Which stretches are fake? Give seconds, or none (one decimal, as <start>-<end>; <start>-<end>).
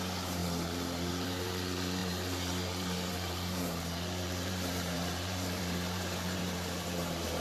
0.0-7.4